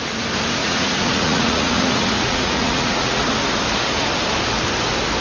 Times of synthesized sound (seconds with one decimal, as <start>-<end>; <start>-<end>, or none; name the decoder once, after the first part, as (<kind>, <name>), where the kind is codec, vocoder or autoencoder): 0.6-3.3 (vocoder, Vocos)